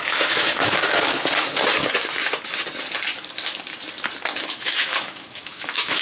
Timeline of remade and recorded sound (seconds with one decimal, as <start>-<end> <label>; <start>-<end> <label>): 0.0-0.8 remade; 0.8-4.4 recorded; 4.4-6.0 remade